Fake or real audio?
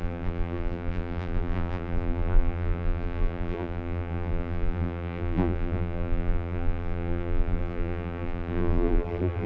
fake